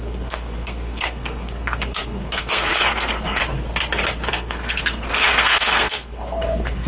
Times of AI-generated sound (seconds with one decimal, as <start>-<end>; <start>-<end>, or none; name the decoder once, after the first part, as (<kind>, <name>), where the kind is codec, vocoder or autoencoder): 0.0-3.4 (codec, SNAC); 4.3-6.9